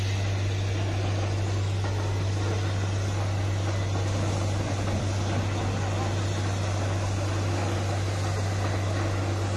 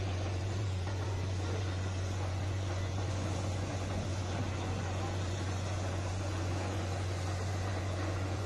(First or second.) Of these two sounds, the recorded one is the first